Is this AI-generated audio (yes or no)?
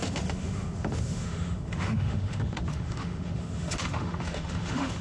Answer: yes